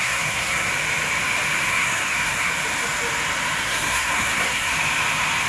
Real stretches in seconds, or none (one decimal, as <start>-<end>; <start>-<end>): 0.7-1.7; 2.5-3.6; 4.7-5.5